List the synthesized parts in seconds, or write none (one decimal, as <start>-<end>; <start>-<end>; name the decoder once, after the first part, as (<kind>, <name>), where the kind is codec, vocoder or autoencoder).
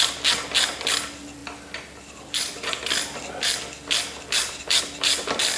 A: none